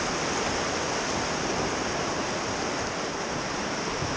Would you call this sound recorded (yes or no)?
yes